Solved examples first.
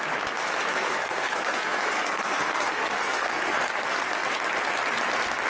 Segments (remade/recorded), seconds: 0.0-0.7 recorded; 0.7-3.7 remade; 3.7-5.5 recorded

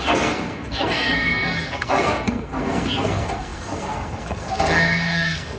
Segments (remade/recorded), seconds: 0.0-5.6 remade

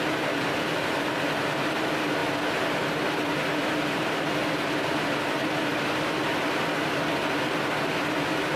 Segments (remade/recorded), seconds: 0.0-8.6 recorded